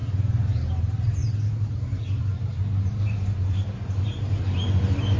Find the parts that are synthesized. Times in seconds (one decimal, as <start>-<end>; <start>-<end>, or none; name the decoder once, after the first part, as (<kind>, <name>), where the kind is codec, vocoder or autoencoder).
0.5-5.2 (vocoder, BigVGAN v2)